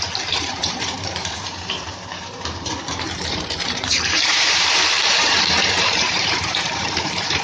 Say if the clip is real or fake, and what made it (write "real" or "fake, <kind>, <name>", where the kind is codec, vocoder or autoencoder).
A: fake, vocoder, BigVGAN v2